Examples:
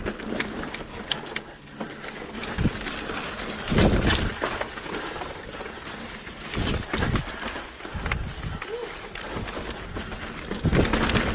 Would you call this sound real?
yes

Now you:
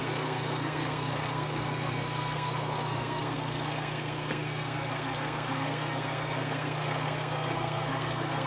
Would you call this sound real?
no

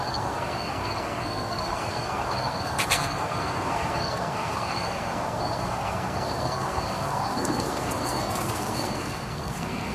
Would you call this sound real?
no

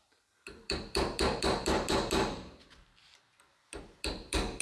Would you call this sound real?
no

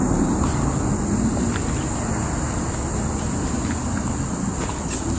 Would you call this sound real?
yes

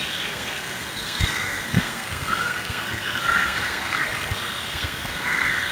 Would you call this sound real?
no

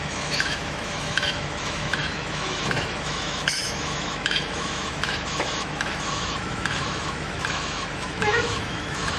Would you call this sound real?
no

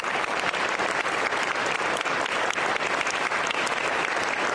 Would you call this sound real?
yes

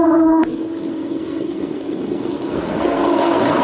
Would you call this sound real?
no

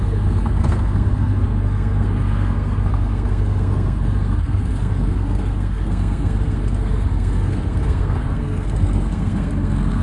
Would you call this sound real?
no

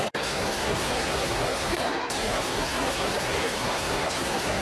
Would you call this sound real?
no